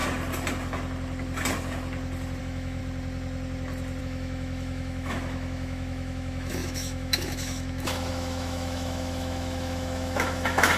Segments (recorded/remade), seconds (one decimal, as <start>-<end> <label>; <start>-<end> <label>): 0.0-2.4 recorded; 2.4-2.8 remade; 2.8-4.0 recorded; 4.0-10.8 remade